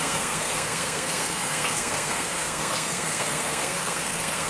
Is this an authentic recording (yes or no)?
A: no